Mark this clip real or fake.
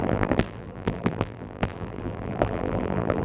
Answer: fake